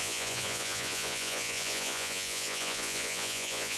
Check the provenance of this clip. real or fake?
fake